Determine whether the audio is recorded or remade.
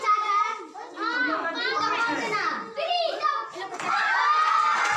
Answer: recorded